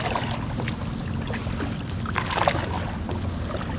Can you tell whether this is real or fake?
real